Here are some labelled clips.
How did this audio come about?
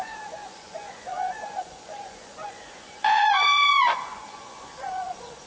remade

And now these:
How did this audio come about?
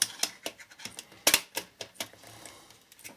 recorded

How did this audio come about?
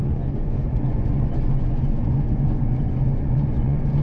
remade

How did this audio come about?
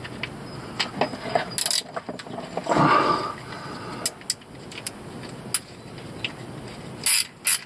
recorded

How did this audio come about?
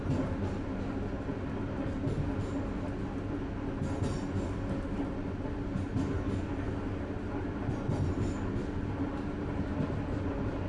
recorded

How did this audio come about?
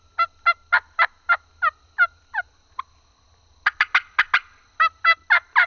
recorded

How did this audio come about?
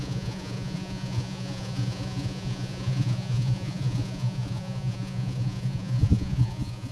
remade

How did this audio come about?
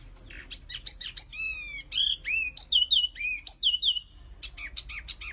recorded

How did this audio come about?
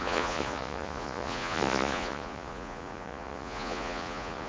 remade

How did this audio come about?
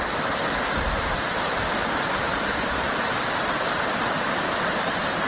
recorded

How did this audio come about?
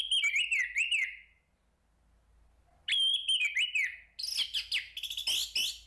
recorded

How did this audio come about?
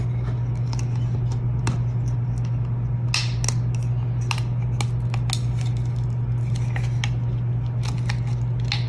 recorded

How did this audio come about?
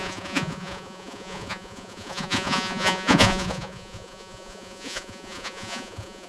remade